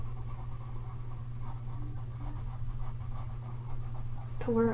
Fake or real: real